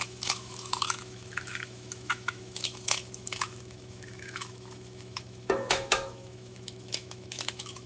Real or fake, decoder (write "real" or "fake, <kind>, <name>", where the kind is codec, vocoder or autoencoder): fake, autoencoder, DAC-VAE